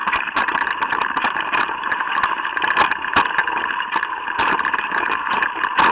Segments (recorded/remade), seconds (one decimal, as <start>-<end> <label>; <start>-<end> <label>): 0.0-2.2 remade; 2.2-3.6 recorded; 3.6-5.4 remade; 5.4-5.9 recorded